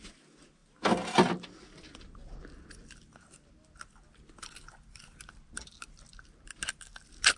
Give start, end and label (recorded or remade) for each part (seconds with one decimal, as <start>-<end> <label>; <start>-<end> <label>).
0.0-7.4 recorded